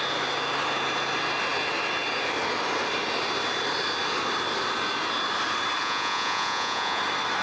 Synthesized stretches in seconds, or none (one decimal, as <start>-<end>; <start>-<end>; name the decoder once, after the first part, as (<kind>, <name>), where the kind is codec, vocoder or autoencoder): 5.8-7.0 (vocoder, Vocos)